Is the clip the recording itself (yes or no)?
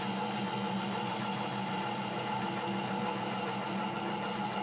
yes